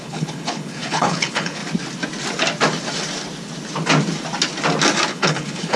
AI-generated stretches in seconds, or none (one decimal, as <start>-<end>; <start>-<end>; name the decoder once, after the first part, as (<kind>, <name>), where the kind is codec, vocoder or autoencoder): 0.0-1.6 (codec, HILCodec); 5.1-5.8